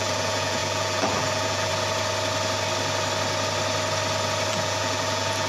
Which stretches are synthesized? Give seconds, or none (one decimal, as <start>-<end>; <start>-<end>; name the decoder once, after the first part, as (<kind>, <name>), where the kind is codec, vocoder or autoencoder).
0.0-1.7 (vocoder, BigVGAN v2); 4.5-5.5